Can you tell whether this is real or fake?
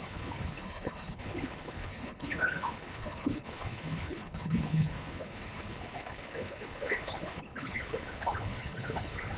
fake